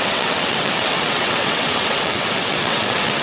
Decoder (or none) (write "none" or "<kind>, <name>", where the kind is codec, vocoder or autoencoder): vocoder, WaveNeXt